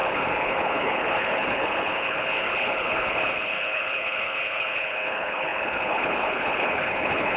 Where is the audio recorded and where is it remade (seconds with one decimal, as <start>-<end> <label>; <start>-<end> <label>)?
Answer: 0.0-7.4 remade